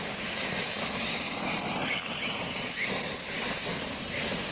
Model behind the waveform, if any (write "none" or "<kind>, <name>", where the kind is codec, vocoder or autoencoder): none